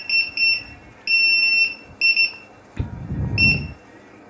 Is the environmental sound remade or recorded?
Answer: recorded